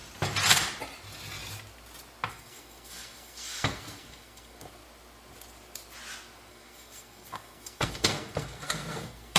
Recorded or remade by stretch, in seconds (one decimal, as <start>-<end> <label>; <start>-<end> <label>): 0.0-2.3 recorded; 2.3-4.8 remade; 4.8-6.5 recorded; 6.5-9.4 remade